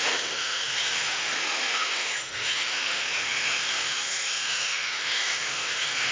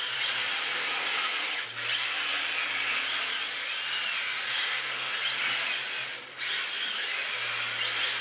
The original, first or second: second